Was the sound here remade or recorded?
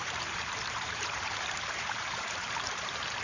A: remade